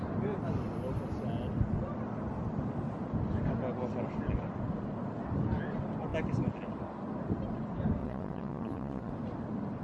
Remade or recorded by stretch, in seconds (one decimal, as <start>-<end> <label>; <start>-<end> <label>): 0.0-8.0 recorded; 8.0-9.1 remade; 9.1-9.8 recorded